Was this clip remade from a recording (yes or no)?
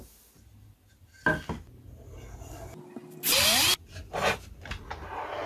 no